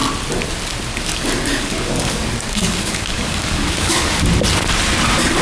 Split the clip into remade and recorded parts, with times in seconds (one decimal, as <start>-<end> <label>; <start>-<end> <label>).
0.0-0.9 recorded; 0.9-4.1 remade; 4.1-5.4 recorded